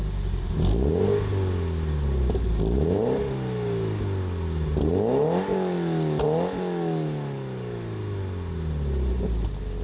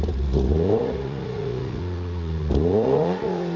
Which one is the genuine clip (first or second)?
first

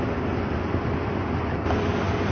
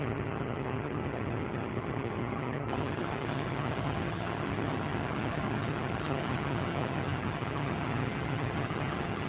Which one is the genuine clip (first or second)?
first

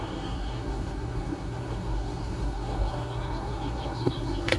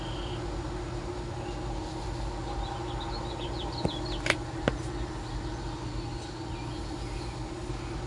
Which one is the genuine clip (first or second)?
second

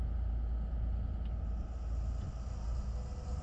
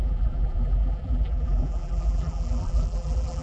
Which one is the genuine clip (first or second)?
first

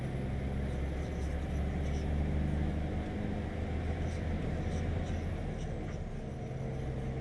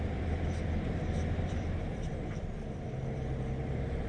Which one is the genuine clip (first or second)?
first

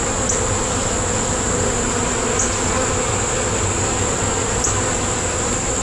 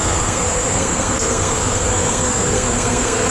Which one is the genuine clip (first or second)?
first